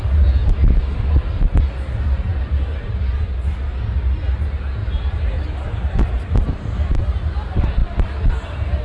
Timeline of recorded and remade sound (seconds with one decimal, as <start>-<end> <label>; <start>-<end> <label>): 0.0-8.8 recorded